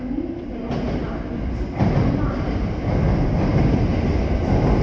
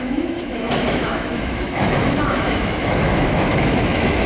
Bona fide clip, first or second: first